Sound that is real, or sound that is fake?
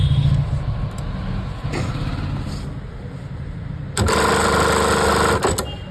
real